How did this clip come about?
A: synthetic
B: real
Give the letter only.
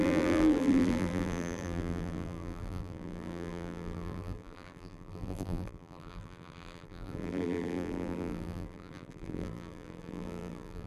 A